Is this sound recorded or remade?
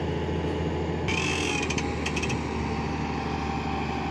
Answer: recorded